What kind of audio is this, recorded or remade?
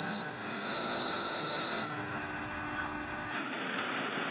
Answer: remade